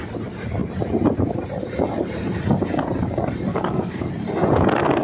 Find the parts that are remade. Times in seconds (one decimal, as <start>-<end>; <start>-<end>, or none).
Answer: 3.5-4.1